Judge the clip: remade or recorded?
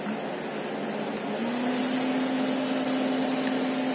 recorded